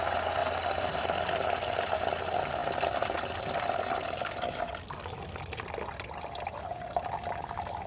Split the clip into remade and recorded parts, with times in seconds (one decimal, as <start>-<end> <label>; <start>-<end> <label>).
0.0-7.9 recorded